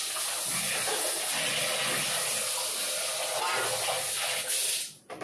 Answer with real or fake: real